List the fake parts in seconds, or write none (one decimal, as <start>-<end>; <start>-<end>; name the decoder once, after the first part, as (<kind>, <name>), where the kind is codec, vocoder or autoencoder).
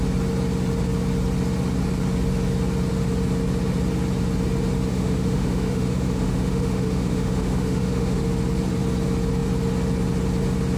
4.9-8.2 (autoencoder, DAC-VAE)